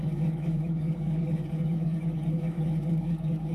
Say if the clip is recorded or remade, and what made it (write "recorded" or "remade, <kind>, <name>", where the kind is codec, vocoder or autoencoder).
remade, codec, DAC